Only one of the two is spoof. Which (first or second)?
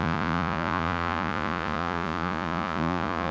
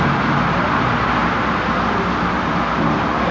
first